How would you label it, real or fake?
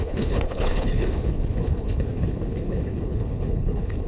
fake